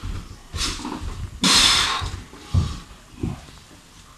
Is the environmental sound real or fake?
real